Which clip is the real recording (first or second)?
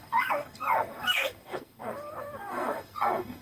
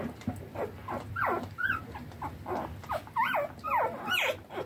second